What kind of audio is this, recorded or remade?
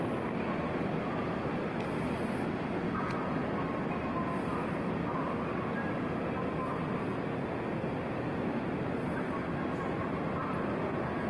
recorded